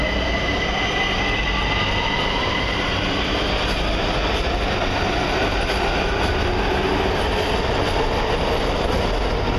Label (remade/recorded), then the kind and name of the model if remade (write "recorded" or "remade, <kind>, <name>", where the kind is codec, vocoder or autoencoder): recorded